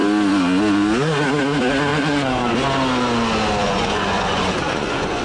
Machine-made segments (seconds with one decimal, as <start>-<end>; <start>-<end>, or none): 1.9-2.5; 3.6-5.2